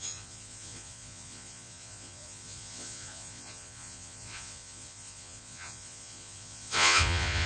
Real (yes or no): no